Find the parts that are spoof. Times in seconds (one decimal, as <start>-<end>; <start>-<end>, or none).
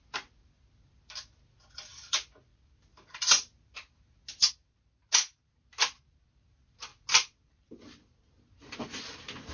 none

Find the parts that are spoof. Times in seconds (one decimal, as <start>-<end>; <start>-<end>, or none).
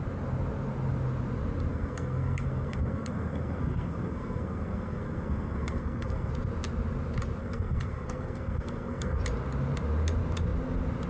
1.7-6.3; 7.4-9.2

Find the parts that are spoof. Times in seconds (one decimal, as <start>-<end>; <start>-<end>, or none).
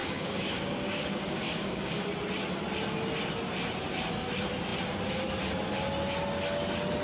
0.0-2.0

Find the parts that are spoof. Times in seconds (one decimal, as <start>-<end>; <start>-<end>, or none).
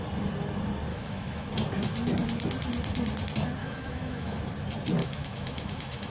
0.9-1.5; 3.6-4.4; 5.0-6.1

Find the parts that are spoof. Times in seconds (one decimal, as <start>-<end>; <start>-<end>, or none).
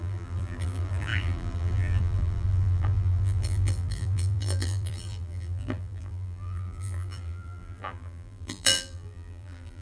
0.0-9.8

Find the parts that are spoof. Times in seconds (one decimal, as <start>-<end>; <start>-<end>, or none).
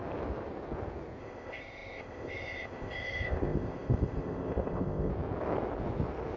1.2-5.1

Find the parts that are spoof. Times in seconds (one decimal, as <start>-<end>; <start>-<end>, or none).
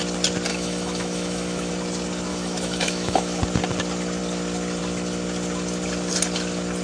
0.5-1.7; 2.3-3.4